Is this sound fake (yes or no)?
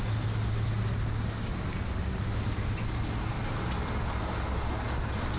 no